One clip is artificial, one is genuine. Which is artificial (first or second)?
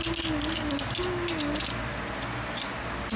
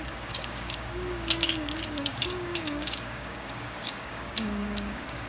second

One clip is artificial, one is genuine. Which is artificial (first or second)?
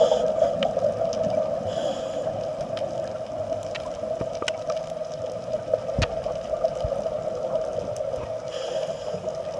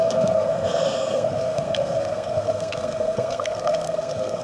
second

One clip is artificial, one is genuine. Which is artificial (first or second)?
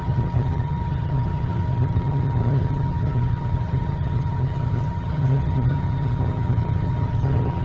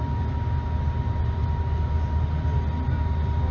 first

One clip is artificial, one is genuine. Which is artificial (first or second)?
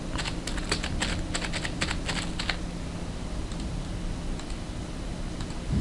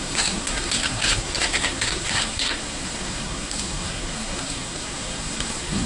second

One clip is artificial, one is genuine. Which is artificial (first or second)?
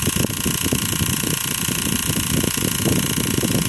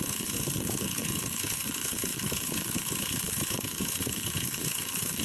second